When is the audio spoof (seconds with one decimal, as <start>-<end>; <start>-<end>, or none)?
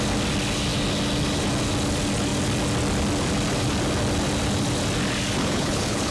5.4-6.1